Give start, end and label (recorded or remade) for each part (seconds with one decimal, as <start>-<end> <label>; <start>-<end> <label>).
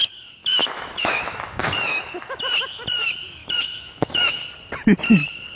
0.0-0.4 recorded; 0.4-2.4 remade; 2.4-3.4 recorded; 3.4-4.4 remade; 4.4-5.6 recorded